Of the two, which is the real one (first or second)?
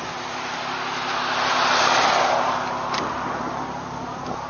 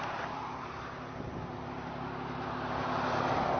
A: first